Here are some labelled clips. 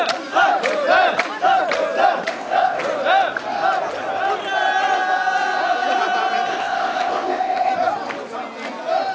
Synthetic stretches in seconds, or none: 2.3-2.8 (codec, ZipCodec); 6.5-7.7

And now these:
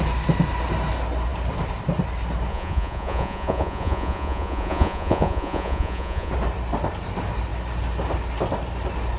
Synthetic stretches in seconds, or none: 2.5-6.3 (vocoder, Vocos)